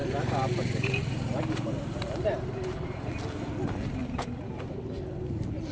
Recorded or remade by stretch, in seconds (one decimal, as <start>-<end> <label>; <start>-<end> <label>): 0.0-3.1 remade; 3.1-4.0 recorded; 4.0-4.7 remade; 4.7-5.7 recorded